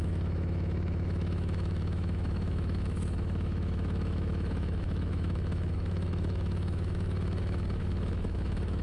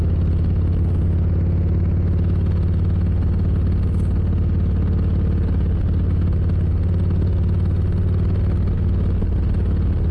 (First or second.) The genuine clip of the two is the second